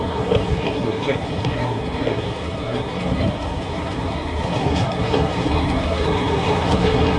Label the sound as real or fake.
fake